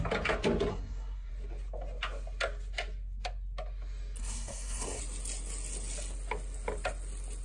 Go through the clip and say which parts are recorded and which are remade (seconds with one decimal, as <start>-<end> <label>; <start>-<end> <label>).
0.0-0.7 recorded; 0.7-1.3 remade; 1.3-4.2 recorded; 4.2-5.0 remade; 5.0-7.4 recorded